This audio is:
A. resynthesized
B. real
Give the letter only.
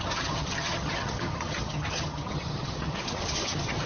A